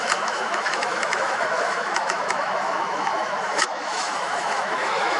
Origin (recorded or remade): remade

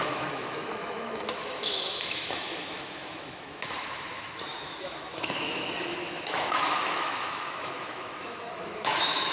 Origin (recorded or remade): remade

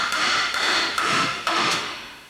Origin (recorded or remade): remade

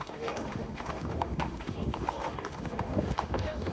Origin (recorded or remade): remade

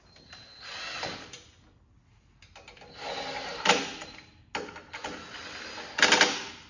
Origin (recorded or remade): recorded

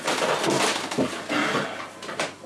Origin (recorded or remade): recorded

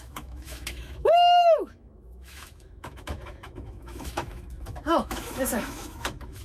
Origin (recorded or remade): remade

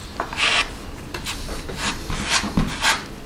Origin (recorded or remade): recorded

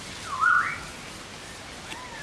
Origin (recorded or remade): recorded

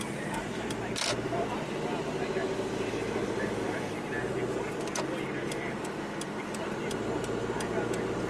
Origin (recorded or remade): recorded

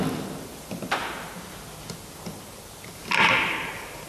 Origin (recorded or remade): recorded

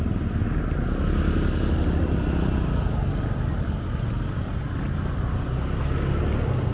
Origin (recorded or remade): recorded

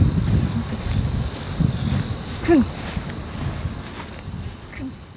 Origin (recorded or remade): recorded